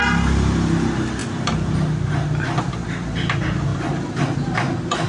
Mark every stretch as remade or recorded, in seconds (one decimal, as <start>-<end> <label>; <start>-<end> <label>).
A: 0.0-5.1 recorded